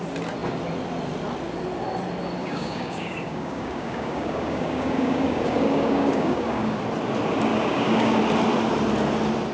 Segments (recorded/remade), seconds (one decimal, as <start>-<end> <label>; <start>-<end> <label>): 0.0-2.4 recorded; 2.4-6.8 remade; 6.8-7.5 recorded; 7.5-8.2 remade; 8.2-9.5 recorded